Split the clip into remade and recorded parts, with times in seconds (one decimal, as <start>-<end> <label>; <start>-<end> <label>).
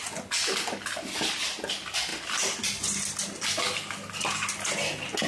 0.0-2.1 recorded; 2.1-4.2 remade; 4.2-5.3 recorded